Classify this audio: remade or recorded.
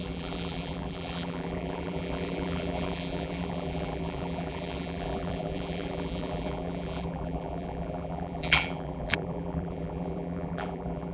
remade